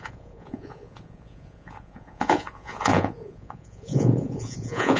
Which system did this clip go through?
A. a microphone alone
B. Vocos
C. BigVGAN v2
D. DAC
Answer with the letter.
B